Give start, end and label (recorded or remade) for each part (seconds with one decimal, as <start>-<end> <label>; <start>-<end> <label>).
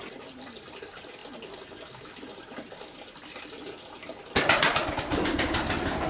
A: 0.0-6.1 recorded